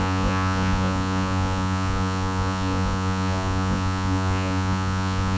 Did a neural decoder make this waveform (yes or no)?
yes